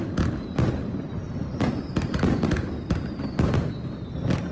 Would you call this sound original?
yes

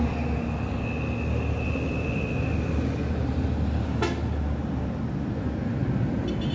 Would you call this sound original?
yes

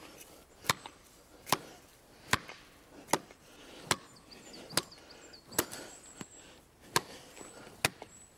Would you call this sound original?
yes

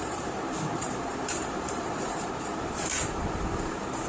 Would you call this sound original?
no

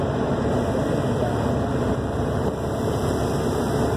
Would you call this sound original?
no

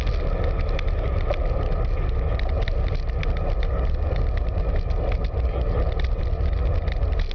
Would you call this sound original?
yes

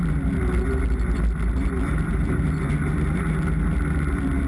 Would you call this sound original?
yes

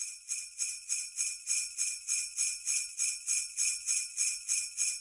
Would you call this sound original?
yes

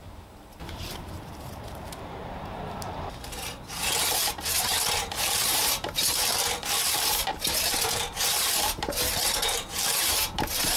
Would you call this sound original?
no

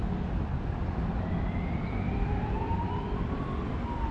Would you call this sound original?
no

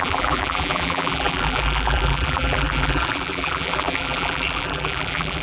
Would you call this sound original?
no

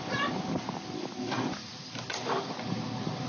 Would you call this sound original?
no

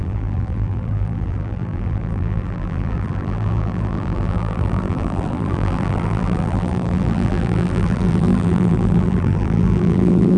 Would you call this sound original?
no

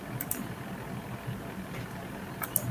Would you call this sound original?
yes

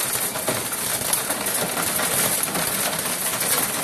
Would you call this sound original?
yes